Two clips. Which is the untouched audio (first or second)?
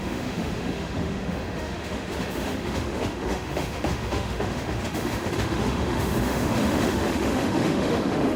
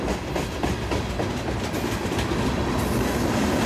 second